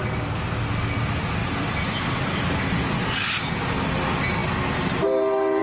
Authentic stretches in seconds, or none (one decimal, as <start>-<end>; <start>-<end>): 0.0-1.4; 3.1-5.6